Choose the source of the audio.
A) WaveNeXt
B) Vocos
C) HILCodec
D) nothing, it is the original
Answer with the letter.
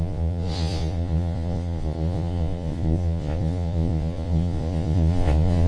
B